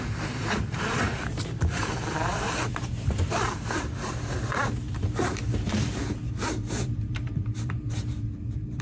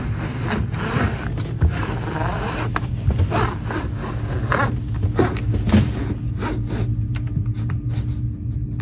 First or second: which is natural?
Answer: second